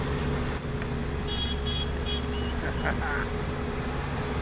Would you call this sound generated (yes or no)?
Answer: no